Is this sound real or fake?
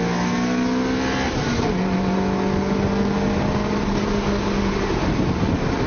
real